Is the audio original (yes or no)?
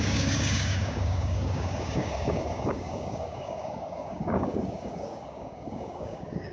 no